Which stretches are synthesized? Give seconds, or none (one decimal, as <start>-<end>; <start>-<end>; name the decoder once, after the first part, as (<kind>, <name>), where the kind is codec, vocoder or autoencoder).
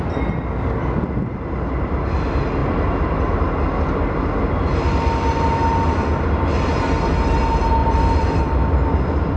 7.8-8.4 (vocoder, BigVGAN v2)